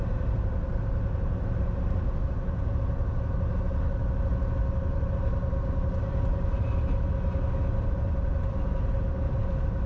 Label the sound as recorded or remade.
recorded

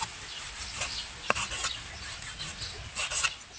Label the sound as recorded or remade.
recorded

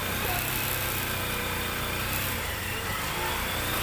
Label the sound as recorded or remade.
recorded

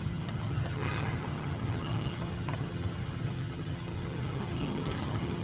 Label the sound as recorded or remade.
remade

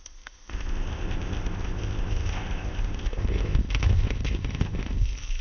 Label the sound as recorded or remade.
remade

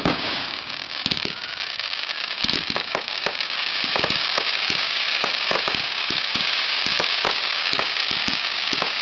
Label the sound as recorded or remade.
remade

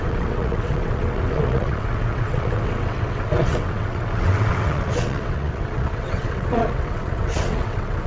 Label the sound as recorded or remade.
remade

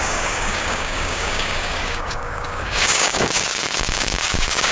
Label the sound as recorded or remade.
remade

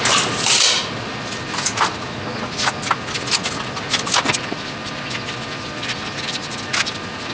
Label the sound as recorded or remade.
recorded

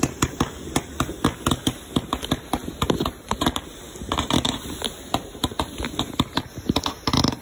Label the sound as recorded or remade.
recorded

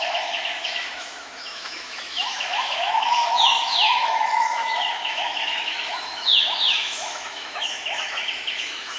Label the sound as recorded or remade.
remade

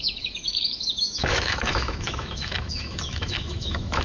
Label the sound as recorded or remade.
remade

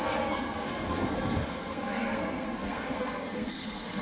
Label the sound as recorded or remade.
remade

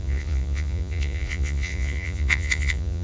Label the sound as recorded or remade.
remade